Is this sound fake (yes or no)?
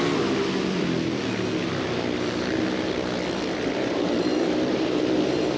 yes